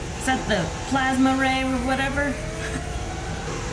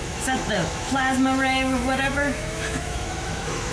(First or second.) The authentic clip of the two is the first